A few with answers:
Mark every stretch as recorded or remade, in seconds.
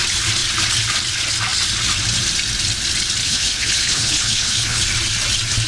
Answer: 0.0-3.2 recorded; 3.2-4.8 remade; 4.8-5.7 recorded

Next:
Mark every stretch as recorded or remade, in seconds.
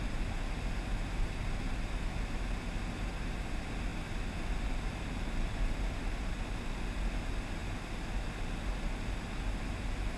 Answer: 0.0-10.2 recorded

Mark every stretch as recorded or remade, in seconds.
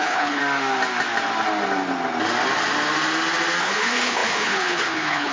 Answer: 0.0-0.4 remade; 0.4-3.6 recorded; 3.6-5.3 remade